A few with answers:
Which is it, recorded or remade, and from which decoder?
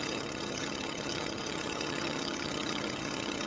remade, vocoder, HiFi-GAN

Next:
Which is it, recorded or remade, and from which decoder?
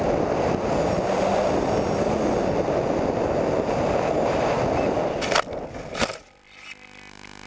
recorded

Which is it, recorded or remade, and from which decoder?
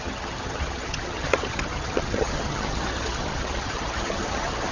remade, vocoder, HiFi-GAN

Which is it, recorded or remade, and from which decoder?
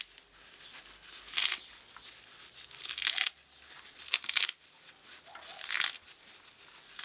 recorded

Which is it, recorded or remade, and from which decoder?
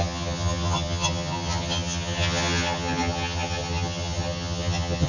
remade, vocoder, HiFi-GAN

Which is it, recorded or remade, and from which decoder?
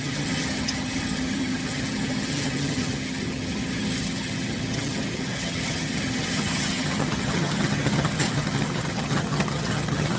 remade, vocoder, HiFi-GAN